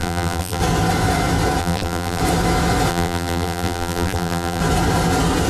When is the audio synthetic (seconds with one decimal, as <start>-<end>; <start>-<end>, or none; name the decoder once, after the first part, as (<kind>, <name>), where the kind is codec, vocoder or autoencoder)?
0.0-0.6 (vocoder, BigVGAN v2); 1.6-2.2; 2.9-4.6